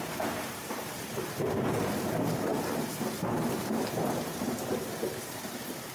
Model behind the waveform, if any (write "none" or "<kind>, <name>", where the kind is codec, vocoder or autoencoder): vocoder, BigVGAN v2